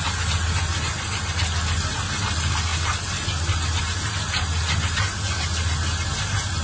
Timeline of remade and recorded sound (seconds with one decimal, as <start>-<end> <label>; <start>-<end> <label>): 0.0-6.6 recorded